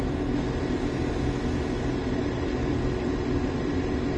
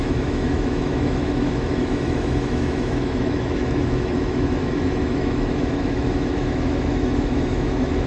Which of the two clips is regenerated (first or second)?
second